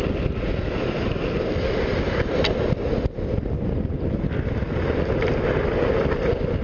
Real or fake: real